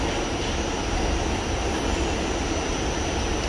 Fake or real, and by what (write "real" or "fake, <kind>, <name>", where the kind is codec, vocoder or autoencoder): real